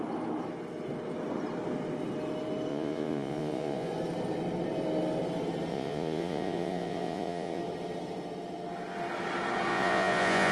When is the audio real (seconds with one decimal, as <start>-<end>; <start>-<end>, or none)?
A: 0.0-2.7; 3.9-5.7; 7.6-9.7